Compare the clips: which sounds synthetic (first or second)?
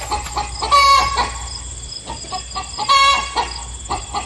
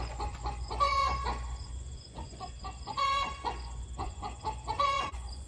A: second